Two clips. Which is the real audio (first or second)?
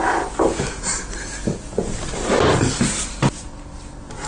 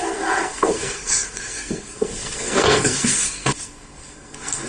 first